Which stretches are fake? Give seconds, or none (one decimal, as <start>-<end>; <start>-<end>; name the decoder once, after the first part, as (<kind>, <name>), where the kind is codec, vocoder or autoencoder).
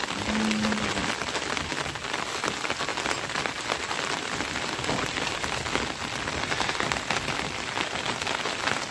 none